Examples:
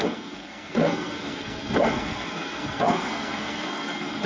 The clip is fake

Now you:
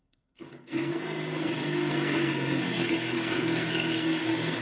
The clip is fake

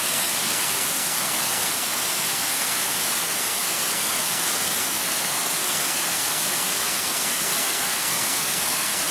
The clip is fake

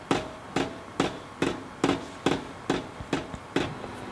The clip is real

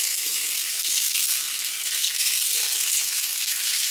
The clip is fake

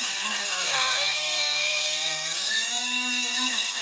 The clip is fake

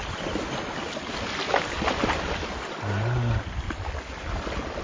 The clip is real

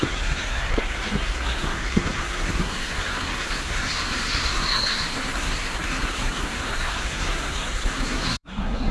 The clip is fake